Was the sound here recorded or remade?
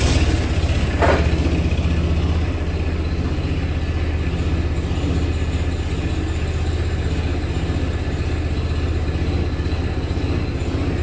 recorded